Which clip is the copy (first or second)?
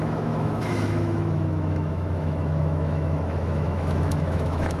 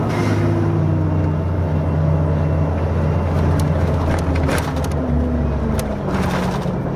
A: first